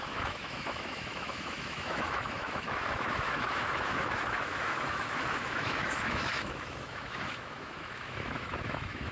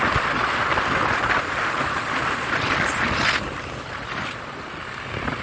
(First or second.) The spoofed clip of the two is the first